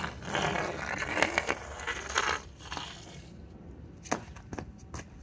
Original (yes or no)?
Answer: yes